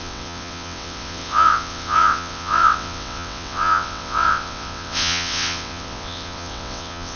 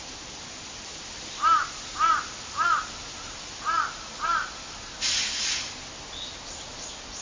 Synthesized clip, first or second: first